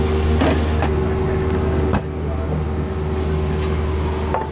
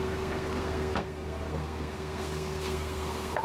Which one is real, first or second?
first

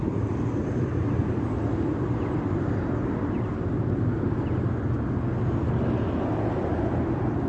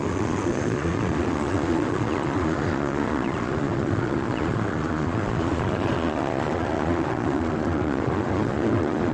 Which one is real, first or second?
first